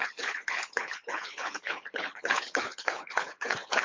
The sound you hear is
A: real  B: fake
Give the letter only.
B